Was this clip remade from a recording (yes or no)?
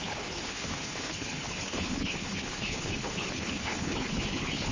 yes